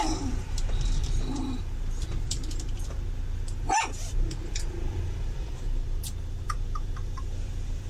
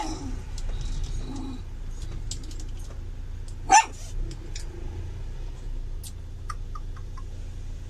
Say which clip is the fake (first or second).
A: first